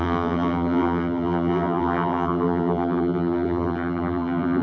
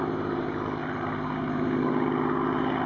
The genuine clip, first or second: second